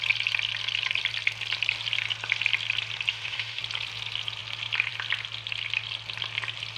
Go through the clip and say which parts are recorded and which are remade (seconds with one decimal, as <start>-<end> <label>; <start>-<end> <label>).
0.0-3.1 recorded; 3.1-3.6 remade; 3.6-6.8 recorded